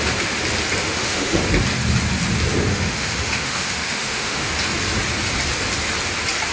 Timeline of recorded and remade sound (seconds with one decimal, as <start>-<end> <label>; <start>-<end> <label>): 0.0-0.8 recorded; 0.8-1.4 remade; 1.4-2.7 recorded; 2.7-4.5 remade; 4.5-6.5 recorded